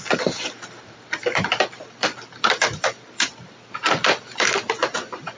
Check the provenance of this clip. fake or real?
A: fake